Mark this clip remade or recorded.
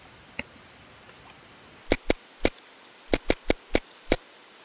recorded